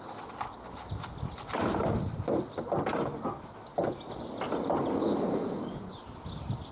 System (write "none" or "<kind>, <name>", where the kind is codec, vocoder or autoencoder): none